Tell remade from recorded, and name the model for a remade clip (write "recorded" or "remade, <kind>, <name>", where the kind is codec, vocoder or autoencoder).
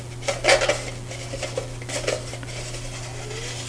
recorded